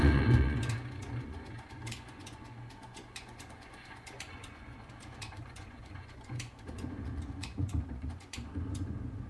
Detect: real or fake fake